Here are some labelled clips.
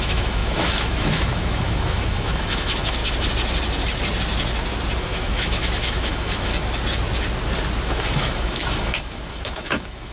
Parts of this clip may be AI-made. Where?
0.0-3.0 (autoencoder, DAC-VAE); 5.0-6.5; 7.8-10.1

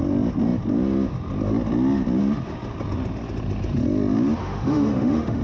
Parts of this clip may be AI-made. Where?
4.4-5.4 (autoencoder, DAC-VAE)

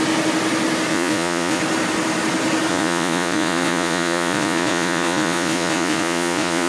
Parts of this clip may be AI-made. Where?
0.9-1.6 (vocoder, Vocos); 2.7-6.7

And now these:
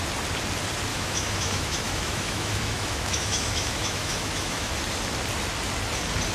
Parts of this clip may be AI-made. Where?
0.9-4.7 (autoencoder, DAC-VAE)

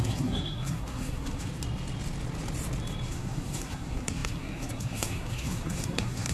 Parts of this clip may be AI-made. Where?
0.0-1.5 (codec, SNAC); 3.1-6.3

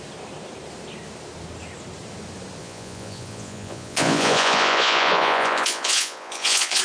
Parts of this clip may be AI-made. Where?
2.6-6.8 (vocoder, Vocos)

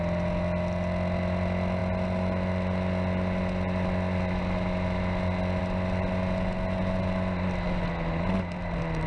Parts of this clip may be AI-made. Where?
none